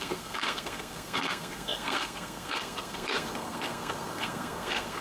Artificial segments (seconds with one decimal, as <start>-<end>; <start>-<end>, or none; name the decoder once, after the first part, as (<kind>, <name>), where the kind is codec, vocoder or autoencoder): 0.0-5.0 (codec, SNAC)